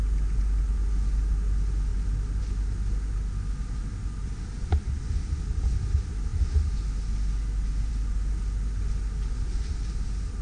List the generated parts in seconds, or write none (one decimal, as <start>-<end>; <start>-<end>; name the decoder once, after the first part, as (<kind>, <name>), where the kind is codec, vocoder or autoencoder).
none